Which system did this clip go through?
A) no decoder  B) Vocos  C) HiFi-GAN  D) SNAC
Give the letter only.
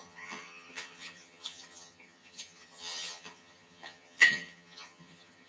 C